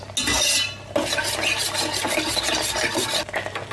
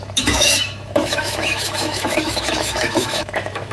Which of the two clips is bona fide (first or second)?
first